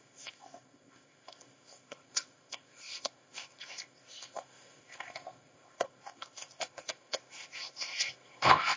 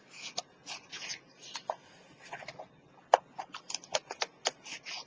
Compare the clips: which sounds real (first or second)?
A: second